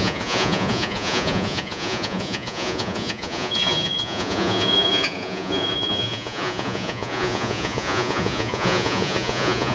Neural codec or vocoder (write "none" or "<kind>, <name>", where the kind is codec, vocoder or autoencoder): vocoder, Vocos